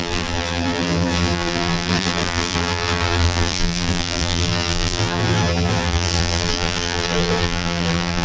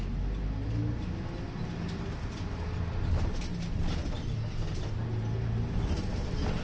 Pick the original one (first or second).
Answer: second